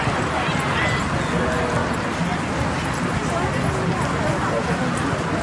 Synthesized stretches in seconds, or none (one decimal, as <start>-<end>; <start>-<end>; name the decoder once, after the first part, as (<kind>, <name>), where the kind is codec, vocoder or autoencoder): none